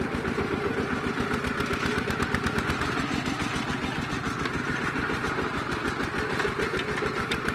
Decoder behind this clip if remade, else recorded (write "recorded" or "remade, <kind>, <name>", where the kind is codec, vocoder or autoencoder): remade, vocoder, BigVGAN v2